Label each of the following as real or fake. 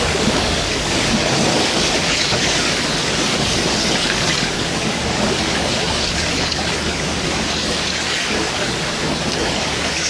fake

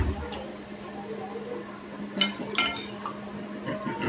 real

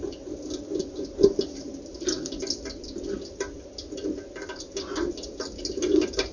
real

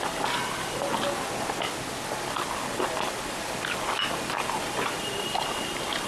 real